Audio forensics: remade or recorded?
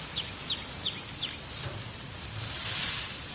recorded